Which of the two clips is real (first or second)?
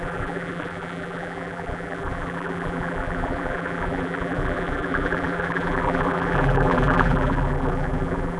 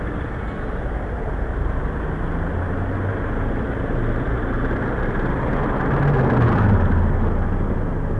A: second